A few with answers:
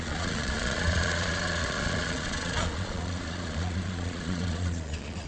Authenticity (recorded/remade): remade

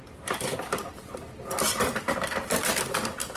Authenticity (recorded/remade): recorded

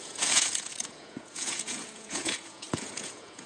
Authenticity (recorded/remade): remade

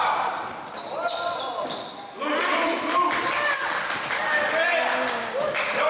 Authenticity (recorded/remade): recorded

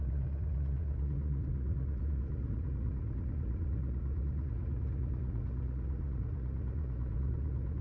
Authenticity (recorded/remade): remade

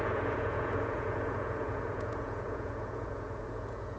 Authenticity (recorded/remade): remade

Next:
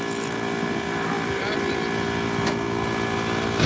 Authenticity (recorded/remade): recorded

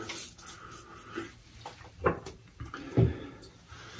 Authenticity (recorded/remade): recorded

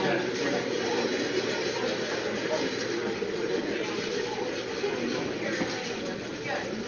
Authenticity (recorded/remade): recorded